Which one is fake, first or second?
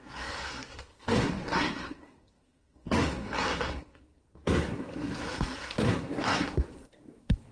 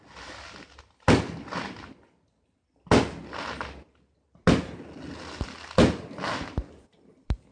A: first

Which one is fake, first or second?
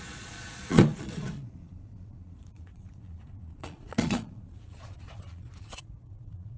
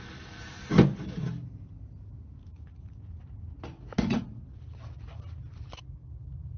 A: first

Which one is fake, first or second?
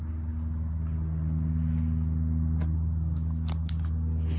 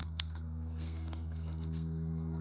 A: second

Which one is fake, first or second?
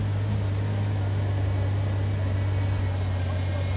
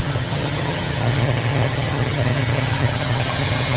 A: second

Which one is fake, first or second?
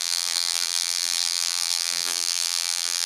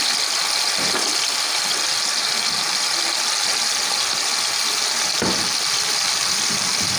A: first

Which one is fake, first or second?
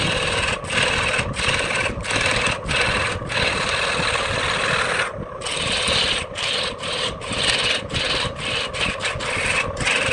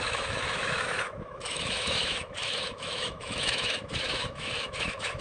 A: second